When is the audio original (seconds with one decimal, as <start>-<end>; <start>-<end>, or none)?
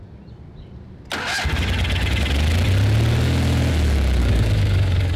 0.0-4.2